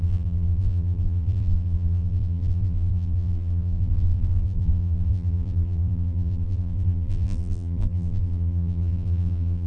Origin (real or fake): fake